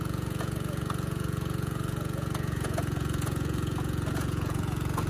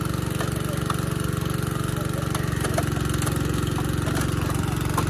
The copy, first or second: first